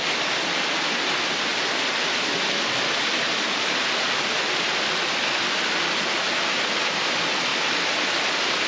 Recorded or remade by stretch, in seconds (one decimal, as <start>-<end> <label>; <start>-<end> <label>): 0.0-8.7 recorded